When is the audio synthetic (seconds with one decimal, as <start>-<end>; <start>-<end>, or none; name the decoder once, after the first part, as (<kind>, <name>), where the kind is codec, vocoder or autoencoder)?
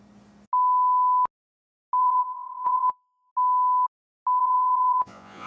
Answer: 2.0-3.3 (vocoder, Vocos); 4.4-5.5